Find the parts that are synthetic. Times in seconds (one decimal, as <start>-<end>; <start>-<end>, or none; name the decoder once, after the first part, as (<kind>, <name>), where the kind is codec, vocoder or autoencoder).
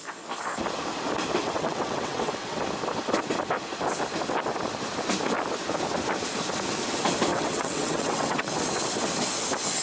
1.4-2.6 (vocoder, WaveNeXt); 7.3-8.5